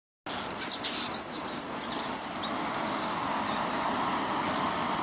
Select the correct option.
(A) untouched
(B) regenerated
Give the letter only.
A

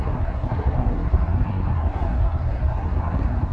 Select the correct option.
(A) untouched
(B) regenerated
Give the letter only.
B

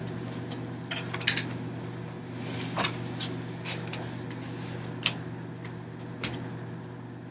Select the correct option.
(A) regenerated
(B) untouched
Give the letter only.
B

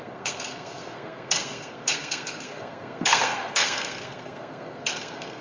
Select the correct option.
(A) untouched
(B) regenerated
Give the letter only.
B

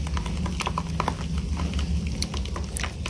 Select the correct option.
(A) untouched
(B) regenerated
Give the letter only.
A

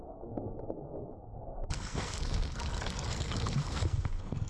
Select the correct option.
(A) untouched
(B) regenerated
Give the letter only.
B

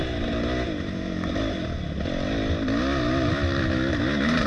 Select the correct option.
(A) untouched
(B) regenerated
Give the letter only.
A